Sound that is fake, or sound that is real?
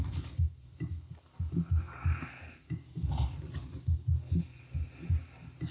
real